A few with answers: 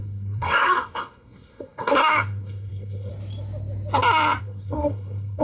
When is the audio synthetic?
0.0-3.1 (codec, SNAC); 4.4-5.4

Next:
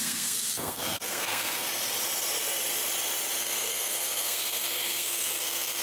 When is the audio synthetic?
0.0-1.7 (codec, SNAC); 3.4-5.8

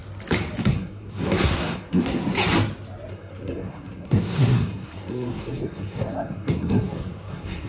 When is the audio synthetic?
0.6-2.3 (codec, SNAC); 3.1-7.7

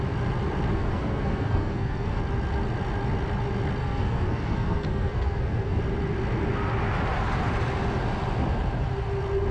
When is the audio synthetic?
0.7-2.2 (codec, SNAC); 3.8-5.8

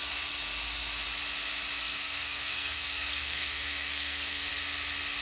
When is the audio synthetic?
1.8-4.5 (codec, SNAC)

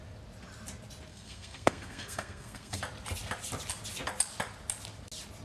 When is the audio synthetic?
1.1-2.8 (codec, SNAC)